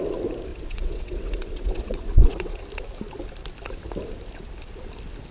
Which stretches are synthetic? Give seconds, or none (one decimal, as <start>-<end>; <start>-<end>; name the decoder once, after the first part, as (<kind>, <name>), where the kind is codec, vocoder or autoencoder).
0.5-2.6 (vocoder, WaveNeXt)